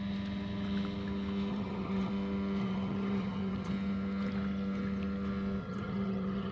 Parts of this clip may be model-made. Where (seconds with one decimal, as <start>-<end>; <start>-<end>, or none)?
1.5-2.1; 2.6-3.7; 5.6-6.5